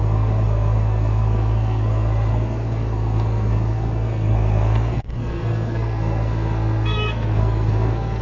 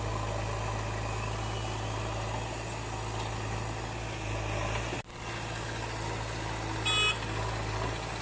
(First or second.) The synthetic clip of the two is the first